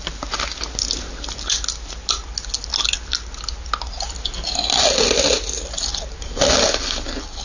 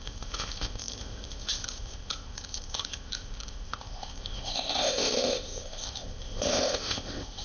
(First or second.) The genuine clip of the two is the first